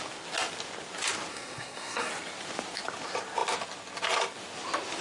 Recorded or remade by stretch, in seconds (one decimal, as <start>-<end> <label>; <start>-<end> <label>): 0.0-1.3 recorded; 1.3-2.1 remade; 2.1-5.0 recorded